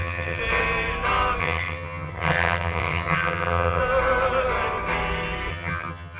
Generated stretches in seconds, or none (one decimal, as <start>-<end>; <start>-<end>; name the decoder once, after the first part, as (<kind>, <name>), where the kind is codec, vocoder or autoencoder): 0.0-0.4 (vocoder, HiFi-GAN); 1.4-3.8; 5.5-6.2